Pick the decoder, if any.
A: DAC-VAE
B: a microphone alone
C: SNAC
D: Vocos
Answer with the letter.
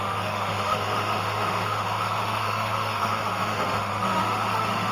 A